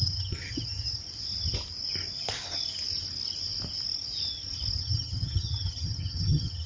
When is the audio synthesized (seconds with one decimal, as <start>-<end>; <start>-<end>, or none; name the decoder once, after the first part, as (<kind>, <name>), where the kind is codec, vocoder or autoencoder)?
0.0-1.0 (vocoder, HiFi-GAN); 4.8-6.7